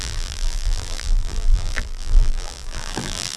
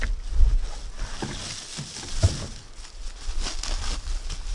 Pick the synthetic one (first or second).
first